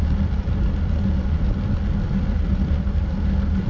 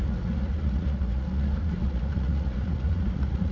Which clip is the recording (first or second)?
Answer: first